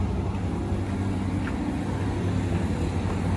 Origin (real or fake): real